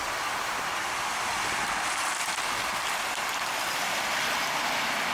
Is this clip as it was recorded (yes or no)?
yes